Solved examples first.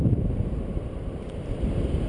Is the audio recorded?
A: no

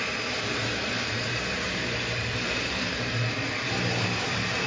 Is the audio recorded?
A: no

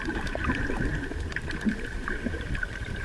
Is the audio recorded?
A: no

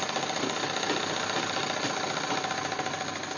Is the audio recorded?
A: yes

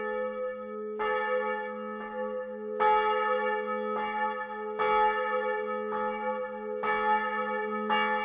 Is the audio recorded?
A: yes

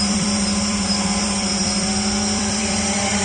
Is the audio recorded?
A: no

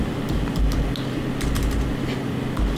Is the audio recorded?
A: yes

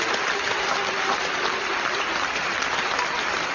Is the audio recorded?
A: no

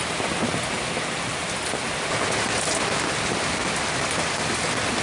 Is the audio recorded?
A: yes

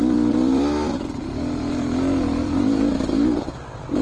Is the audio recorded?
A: no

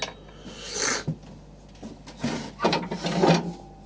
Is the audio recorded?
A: yes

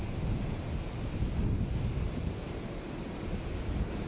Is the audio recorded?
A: yes